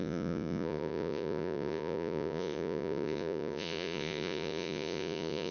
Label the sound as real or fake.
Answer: fake